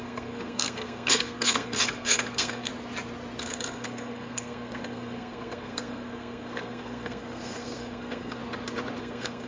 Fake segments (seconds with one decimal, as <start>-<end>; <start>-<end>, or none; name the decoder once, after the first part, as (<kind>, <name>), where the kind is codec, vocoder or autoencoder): 0.0-2.7 (codec, SNAC); 3.4-8.4; 9.0-9.5